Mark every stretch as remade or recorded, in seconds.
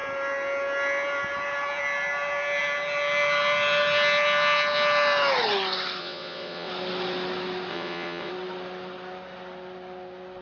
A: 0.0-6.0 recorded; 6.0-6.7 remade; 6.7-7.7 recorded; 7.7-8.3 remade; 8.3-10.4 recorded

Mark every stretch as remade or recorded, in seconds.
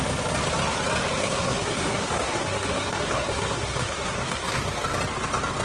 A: 0.0-1.2 recorded; 1.2-4.6 remade; 4.6-5.6 recorded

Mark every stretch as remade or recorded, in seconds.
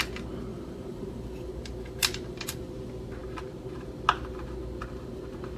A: 0.0-0.5 recorded; 0.5-2.7 remade; 2.7-5.6 recorded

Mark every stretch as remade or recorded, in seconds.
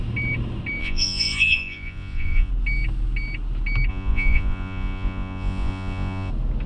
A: 0.0-0.8 recorded; 0.8-2.5 remade; 2.5-3.9 recorded; 3.9-6.3 remade; 6.3-6.7 recorded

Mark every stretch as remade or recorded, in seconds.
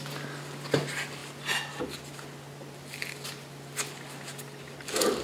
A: 0.0-5.2 recorded